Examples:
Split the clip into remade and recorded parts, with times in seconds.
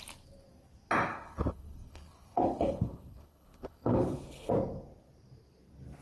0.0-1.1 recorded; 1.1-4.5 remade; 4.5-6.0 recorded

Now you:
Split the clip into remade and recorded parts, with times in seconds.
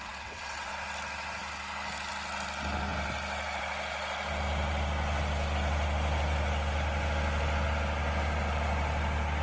0.0-0.7 remade; 0.7-9.4 recorded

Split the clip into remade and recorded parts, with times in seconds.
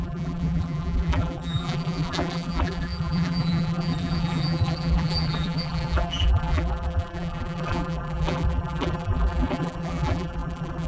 0.0-10.9 remade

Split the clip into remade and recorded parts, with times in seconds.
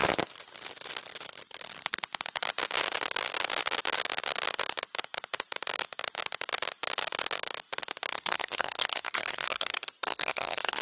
0.0-8.1 recorded; 8.1-10.8 remade